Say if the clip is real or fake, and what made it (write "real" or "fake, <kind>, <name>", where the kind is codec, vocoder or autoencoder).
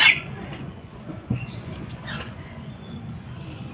fake, vocoder, Vocos